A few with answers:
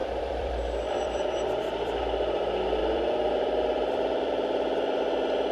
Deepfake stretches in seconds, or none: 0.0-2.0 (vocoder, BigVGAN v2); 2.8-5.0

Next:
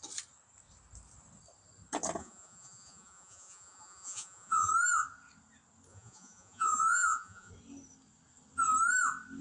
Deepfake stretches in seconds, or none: 2.2-4.7 (vocoder, Vocos); 5.9-7.5

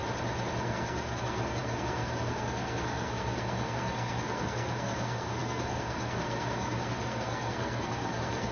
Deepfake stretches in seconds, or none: 0.6-8.5 (codec, SNAC)

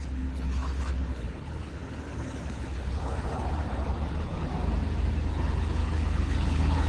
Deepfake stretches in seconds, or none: 0.0-4.5 (codec, HILCodec); 5.3-6.9

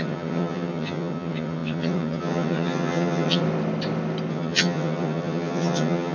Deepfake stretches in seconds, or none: 0.0-3.4 (vocoder, HiFi-GAN); 4.3-6.1

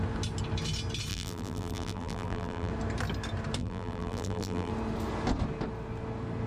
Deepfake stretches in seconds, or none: 1.1-2.7 (vocoder, BigVGAN v2); 3.6-4.7